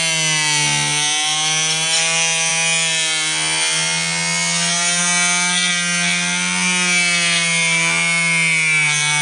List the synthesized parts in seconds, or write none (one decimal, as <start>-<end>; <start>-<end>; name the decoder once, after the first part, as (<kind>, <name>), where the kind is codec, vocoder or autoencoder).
none